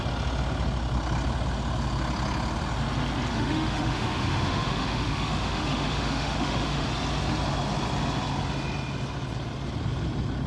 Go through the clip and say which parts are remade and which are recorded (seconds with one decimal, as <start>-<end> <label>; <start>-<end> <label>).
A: 0.0-3.3 recorded; 3.3-6.9 remade; 6.9-10.5 recorded